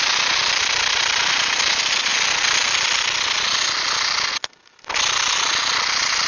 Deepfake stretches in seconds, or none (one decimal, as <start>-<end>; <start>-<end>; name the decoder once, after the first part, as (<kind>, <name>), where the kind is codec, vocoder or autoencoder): none